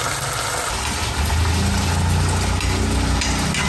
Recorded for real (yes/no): yes